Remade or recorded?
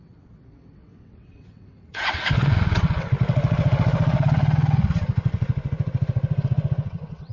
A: remade